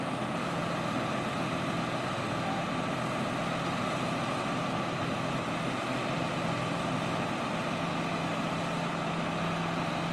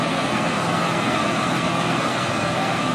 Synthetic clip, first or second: second